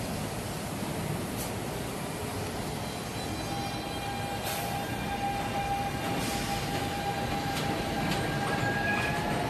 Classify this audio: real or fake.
real